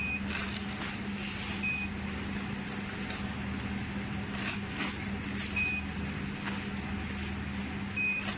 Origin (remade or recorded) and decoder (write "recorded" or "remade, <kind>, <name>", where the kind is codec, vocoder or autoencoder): recorded